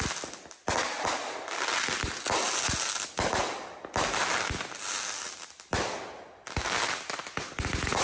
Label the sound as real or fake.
real